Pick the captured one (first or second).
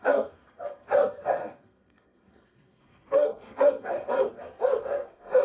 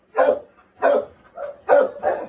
second